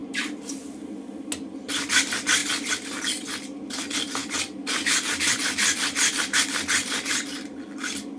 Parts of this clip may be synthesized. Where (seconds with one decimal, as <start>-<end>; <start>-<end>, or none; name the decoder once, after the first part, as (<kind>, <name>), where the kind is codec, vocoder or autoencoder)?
none